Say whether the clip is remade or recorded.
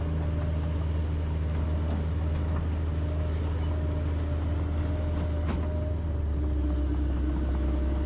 recorded